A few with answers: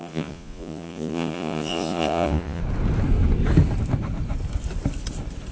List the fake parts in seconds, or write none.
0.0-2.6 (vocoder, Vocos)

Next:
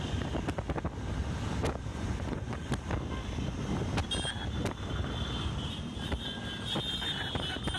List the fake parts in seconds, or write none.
1.9-2.7 (vocoder, Vocos)